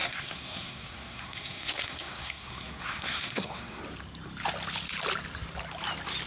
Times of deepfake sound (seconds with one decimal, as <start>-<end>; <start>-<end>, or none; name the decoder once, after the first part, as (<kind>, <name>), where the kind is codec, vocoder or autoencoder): 0.0-3.8 (codec, SNAC)